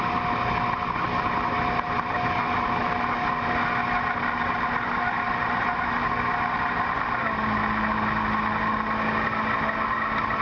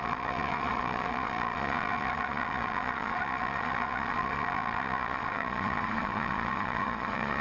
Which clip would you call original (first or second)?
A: first